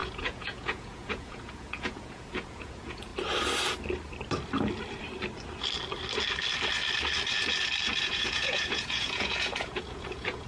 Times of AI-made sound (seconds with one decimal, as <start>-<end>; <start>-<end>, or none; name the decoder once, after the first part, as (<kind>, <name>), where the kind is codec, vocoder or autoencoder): 0.0-3.1 (vocoder, Vocos); 8.0-10.5